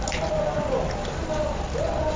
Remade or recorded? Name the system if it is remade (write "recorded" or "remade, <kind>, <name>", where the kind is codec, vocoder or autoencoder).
recorded